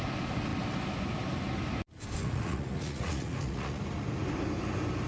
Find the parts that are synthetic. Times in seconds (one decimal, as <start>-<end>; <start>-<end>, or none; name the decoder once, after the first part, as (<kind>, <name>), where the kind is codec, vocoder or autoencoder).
2.2-3.8 (vocoder, Vocos)